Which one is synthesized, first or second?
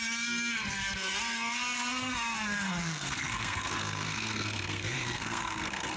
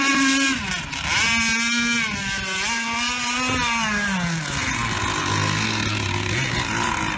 first